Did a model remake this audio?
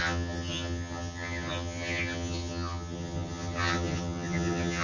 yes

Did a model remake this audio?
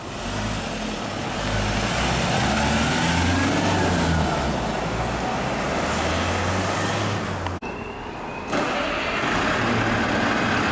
no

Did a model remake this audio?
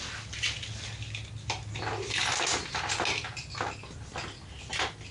no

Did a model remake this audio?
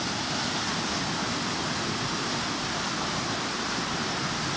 no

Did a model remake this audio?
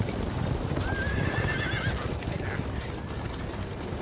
no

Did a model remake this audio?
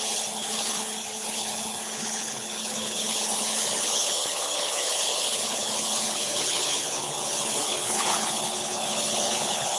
yes